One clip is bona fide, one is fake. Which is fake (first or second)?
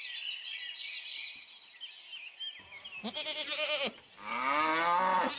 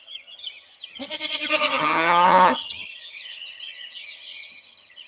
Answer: second